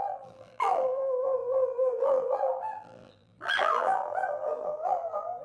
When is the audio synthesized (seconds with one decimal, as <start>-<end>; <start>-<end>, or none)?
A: 0.0-5.4